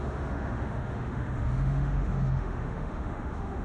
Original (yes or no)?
no